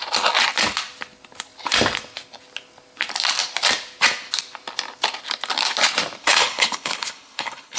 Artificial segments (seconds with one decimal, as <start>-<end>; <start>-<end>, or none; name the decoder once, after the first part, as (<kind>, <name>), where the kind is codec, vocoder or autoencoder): 6.2-7.8 (codec, HILCodec)

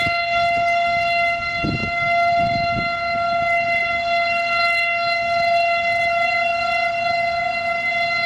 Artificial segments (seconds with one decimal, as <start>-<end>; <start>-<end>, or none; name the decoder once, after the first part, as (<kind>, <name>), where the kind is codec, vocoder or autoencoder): none

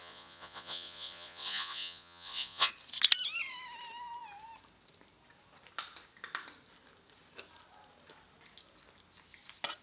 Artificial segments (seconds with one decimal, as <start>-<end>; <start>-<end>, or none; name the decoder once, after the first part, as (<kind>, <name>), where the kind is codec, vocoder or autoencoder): 0.0-2.7 (vocoder, Vocos)

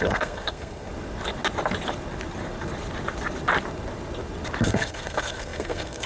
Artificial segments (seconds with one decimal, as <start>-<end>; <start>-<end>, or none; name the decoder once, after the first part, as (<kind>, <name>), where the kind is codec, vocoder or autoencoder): 0.0-0.9 (codec, SNAC); 4.6-6.1

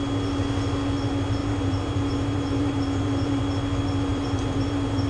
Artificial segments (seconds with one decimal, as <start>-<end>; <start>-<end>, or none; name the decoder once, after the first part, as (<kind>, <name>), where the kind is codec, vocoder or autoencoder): 1.4-3.4 (vocoder, BigVGAN v2); 4.1-5.1

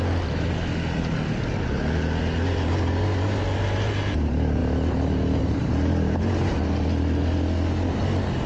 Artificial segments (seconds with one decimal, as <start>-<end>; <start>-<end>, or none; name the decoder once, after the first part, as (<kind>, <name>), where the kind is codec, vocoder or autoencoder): none